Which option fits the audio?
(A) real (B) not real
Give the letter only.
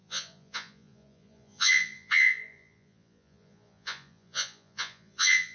B